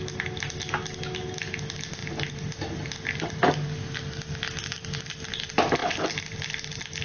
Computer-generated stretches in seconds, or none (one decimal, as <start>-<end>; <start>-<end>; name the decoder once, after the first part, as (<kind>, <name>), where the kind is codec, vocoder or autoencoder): none